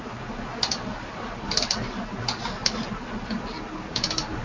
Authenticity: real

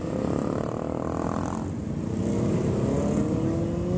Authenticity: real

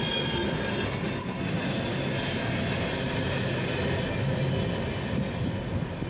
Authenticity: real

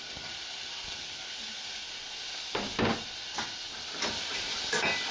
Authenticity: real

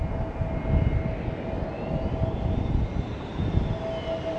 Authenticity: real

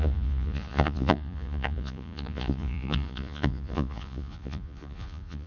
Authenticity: fake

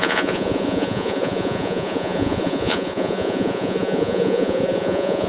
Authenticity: fake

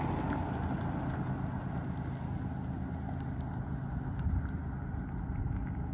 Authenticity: real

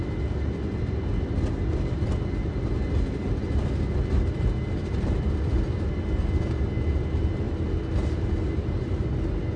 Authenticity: real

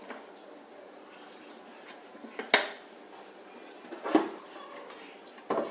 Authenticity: real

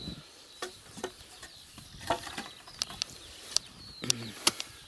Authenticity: real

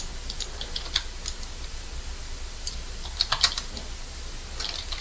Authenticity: real